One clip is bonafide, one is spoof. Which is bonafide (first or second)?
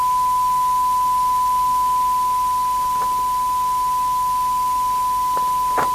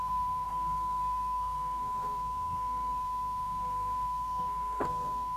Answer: first